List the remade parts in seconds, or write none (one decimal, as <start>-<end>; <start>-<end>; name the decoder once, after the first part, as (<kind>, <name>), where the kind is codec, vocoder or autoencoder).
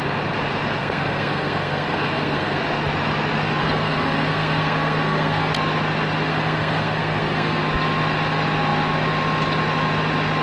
0.8-2.6 (codec, SNAC); 3.6-5.5; 6.3-7.6